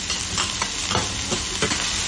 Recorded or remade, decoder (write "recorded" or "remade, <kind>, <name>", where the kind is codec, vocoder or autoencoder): recorded